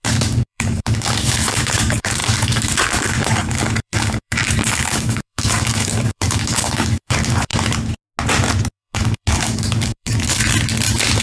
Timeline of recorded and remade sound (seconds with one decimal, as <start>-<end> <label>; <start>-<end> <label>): 0.0-7.5 remade; 7.5-8.7 recorded; 8.7-10.4 remade; 10.4-11.2 recorded